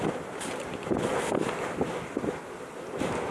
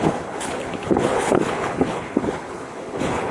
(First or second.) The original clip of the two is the first